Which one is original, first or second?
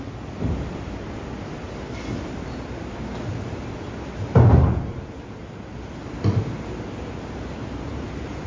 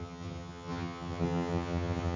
first